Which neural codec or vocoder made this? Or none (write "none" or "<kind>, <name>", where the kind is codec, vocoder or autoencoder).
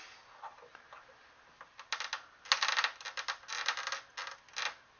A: none